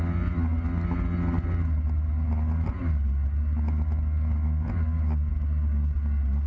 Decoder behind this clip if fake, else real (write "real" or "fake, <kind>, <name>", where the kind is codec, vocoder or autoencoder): real